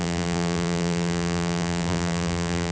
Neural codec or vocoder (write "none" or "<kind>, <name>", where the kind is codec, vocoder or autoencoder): vocoder, BigVGAN v2